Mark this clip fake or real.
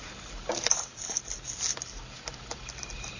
fake